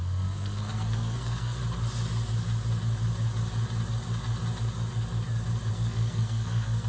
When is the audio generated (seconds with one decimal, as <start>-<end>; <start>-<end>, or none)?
0.0-1.6; 5.7-6.9